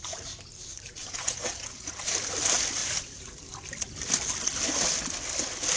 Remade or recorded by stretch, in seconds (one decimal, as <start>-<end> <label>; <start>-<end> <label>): 0.0-1.0 recorded; 1.0-2.0 remade; 2.0-5.8 recorded